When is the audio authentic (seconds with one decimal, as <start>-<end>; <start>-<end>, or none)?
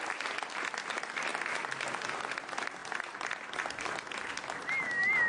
0.0-5.3